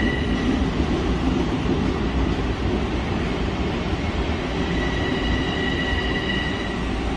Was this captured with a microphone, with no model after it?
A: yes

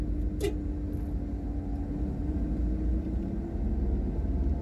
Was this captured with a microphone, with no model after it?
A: yes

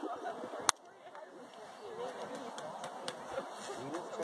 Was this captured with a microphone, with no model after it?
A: yes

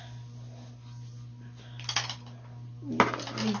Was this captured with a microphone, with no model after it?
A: yes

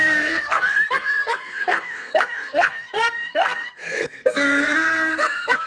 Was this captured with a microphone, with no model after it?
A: no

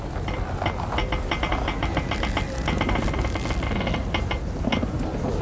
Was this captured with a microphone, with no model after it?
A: yes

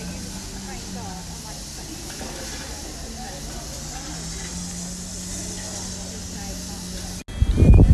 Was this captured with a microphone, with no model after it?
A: yes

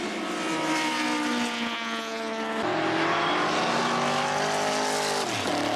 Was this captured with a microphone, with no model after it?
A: yes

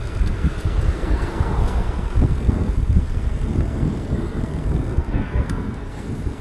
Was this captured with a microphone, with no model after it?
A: no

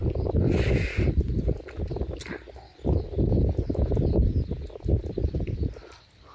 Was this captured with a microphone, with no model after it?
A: yes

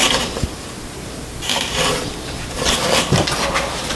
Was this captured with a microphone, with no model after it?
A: yes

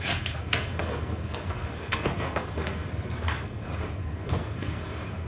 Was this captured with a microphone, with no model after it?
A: no